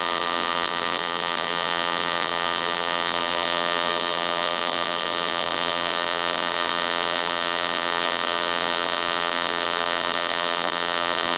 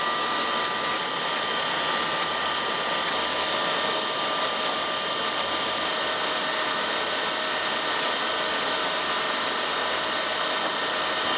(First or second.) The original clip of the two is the second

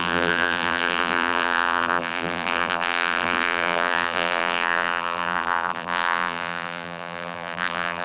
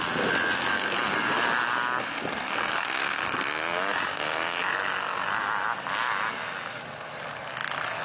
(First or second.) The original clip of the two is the second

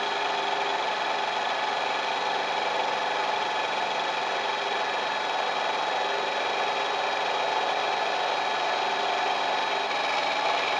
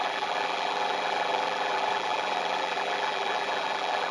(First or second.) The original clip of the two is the first